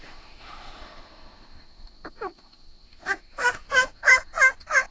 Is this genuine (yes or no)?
no